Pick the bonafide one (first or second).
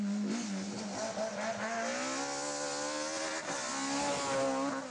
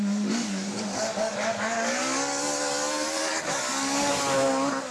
first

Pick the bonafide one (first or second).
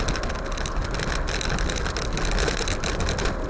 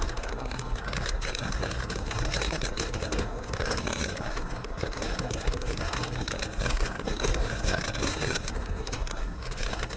first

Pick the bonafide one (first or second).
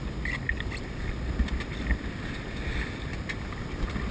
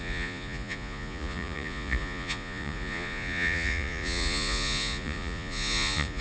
first